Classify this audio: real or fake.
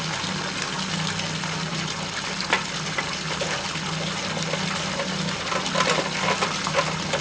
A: real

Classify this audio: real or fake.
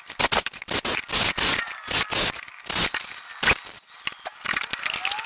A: real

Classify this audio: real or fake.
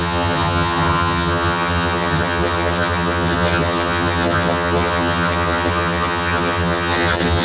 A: fake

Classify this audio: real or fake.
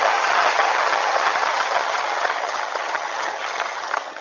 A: fake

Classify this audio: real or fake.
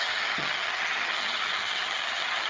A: fake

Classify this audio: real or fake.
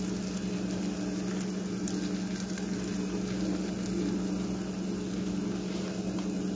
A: real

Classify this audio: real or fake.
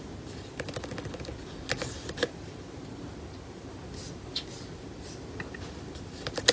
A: real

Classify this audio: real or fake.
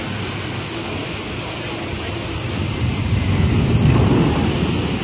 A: real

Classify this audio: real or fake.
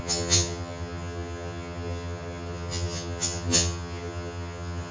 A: fake